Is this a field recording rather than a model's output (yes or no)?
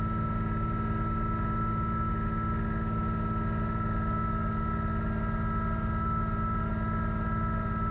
yes